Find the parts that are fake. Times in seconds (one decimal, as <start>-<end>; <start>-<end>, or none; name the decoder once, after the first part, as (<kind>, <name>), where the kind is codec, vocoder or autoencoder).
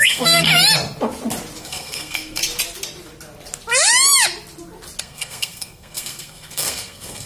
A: 0.0-0.5 (codec, SNAC); 1.6-2.4; 5.0-7.3